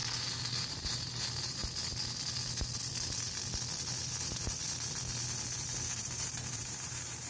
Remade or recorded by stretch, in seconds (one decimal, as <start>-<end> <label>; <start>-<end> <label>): 0.0-0.7 recorded; 0.7-1.6 remade; 1.6-6.0 recorded; 6.0-7.3 remade